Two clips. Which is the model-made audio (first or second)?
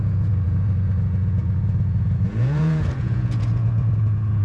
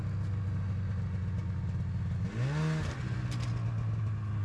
first